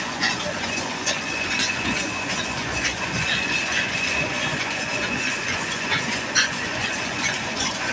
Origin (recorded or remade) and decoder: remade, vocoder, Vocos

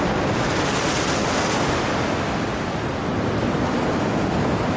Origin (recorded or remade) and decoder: recorded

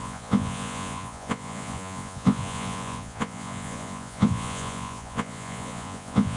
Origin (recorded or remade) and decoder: remade, vocoder, Vocos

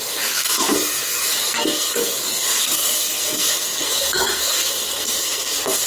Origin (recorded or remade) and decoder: remade, codec, SNAC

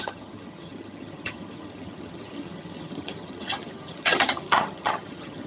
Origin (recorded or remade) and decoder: remade, vocoder, HiFi-GAN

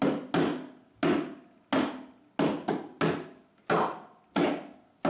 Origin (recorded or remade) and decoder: recorded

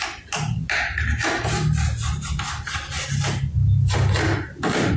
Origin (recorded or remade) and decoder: recorded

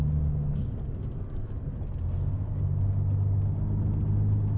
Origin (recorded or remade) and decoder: recorded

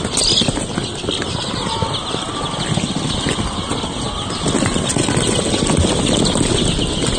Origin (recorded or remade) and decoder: recorded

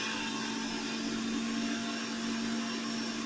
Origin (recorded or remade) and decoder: recorded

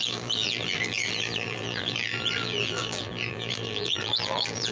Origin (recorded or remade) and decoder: remade, vocoder, BigVGAN v2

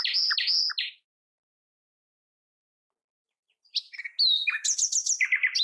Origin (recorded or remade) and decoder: recorded